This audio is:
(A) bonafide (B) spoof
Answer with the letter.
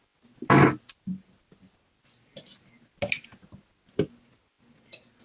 A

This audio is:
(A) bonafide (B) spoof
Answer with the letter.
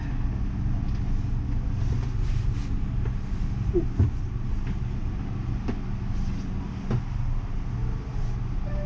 A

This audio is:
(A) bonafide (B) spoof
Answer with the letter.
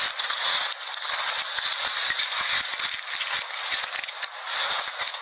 A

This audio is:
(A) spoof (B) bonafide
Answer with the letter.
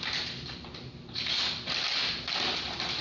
B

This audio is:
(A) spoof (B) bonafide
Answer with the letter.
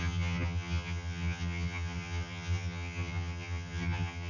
A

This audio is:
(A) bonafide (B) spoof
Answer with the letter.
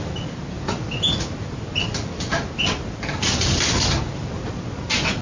A